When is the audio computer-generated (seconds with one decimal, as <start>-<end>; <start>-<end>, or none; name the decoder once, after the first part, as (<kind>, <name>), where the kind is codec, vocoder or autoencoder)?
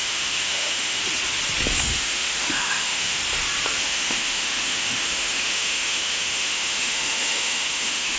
0.0-1.0 (autoencoder, DAC-VAE); 1.8-3.2; 3.8-8.2